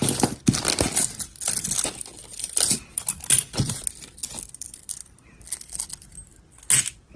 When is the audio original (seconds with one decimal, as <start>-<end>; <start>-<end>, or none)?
0.0-7.2